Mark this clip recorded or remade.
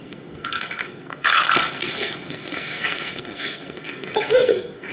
remade